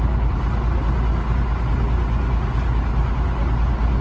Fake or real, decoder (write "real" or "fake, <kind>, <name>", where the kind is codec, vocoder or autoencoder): real